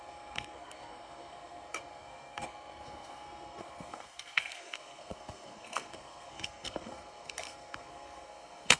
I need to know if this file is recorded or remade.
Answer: remade